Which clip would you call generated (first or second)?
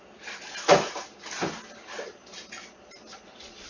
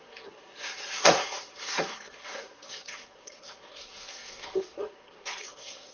second